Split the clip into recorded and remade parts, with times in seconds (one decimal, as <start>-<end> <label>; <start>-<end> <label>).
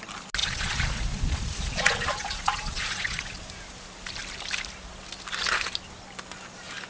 0.0-0.4 recorded; 0.4-3.4 remade; 3.4-6.9 recorded